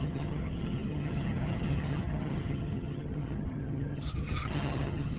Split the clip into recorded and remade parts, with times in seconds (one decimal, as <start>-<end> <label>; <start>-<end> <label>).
0.0-5.2 remade